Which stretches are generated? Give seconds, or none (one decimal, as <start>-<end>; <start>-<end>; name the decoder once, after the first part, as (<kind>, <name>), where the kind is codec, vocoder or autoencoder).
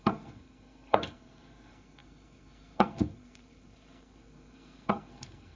0.0-5.6 (codec, SNAC)